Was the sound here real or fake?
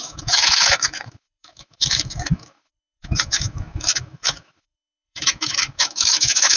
fake